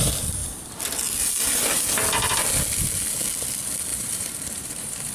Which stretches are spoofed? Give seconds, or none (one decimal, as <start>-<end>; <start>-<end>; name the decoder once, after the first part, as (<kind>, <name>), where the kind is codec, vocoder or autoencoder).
3.9-5.1 (vocoder, BigVGAN v2)